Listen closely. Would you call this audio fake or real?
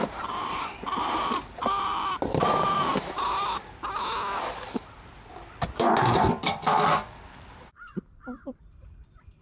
fake